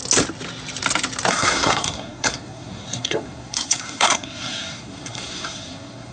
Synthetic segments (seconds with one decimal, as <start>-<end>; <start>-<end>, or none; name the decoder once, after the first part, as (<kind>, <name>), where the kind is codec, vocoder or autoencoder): 1.3-6.1 (codec, SNAC)